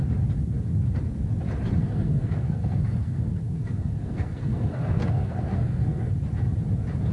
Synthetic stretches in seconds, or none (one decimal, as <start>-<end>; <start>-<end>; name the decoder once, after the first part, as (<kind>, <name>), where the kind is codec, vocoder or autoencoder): 1.8-6.1 (codec, SNAC)

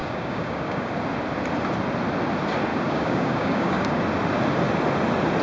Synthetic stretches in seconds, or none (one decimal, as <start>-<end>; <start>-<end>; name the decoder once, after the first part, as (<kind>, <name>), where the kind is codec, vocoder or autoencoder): 0.0-0.9 (codec, DAC); 2.7-4.0

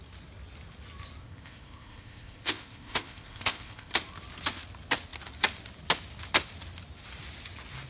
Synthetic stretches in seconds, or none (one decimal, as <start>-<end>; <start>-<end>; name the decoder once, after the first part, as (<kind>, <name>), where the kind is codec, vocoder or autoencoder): 1.2-3.9 (codec, ZipCodec)

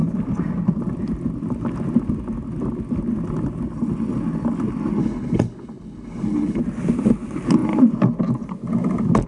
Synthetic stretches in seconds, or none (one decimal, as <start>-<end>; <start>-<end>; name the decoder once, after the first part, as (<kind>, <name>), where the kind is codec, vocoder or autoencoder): 5.0-6.6 (codec, HILCodec)

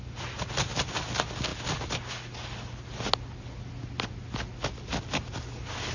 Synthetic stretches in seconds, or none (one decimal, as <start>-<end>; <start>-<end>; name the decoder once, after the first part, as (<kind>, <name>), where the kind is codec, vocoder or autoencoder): none

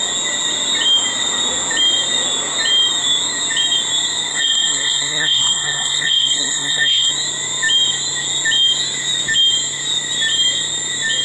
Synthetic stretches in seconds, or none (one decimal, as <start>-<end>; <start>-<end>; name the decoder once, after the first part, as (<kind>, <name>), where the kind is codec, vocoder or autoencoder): 4.3-7.1 (codec, SNAC)

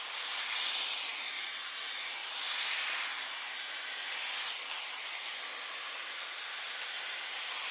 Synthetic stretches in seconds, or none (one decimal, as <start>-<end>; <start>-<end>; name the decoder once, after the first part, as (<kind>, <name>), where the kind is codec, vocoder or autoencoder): none